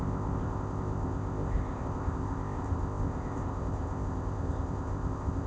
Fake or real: fake